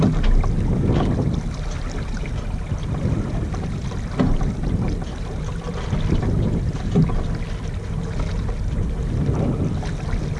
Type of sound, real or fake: real